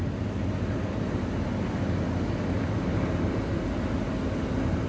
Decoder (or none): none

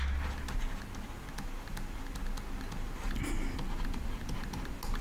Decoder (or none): none